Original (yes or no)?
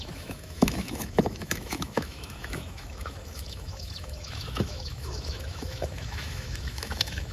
no